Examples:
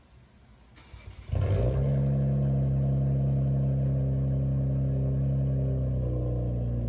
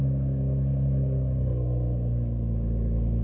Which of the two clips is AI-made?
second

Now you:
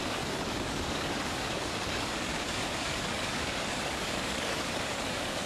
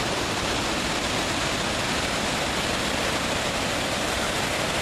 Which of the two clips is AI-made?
first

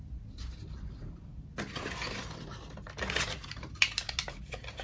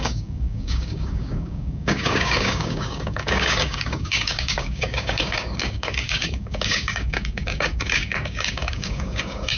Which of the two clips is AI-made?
second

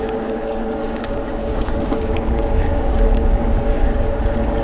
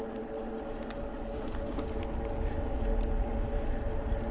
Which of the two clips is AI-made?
first